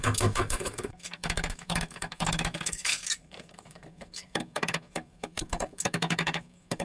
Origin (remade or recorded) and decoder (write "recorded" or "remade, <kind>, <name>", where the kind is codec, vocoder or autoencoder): remade, codec, SNAC